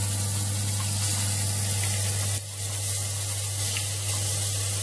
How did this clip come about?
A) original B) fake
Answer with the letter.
A